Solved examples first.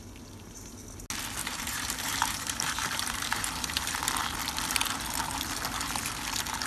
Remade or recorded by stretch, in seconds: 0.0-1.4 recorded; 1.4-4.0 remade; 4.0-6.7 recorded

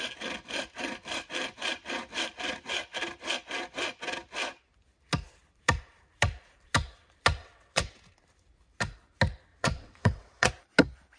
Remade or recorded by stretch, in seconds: 0.0-7.4 recorded; 7.4-7.9 remade; 7.9-9.5 recorded; 9.5-10.5 remade; 10.5-11.2 recorded

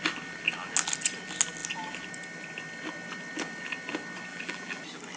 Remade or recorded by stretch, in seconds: 0.0-4.3 recorded; 4.3-4.8 remade; 4.8-5.2 recorded

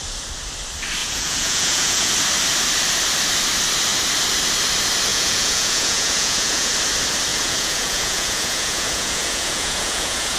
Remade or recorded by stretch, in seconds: 0.0-1.0 recorded; 1.0-2.1 remade; 2.1-5.1 recorded; 5.1-6.7 remade; 6.7-7.3 recorded; 7.3-10.4 remade

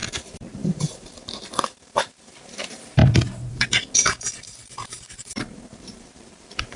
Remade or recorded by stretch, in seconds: 0.0-3.0 remade; 3.0-4.0 recorded; 4.0-6.8 remade